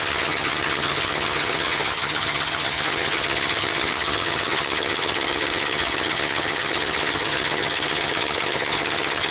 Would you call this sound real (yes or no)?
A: no